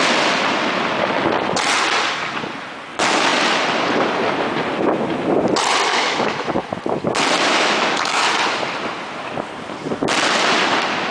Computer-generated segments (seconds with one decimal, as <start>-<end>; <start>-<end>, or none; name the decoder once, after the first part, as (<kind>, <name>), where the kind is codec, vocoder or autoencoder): 5.9-6.5 (autoencoder, DAC-VAE); 7.5-8.2